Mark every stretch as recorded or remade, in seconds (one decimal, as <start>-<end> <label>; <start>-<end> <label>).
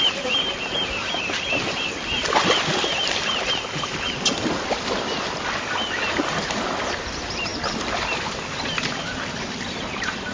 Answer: 0.0-10.3 remade